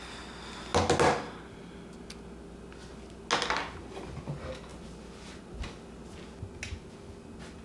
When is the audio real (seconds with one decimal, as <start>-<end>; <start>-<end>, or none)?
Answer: 0.0-7.6